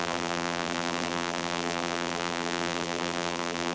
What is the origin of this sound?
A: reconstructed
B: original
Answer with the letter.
A